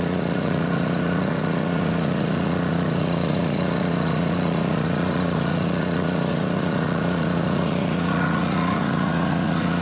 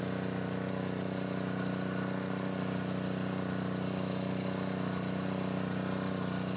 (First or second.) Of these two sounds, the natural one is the second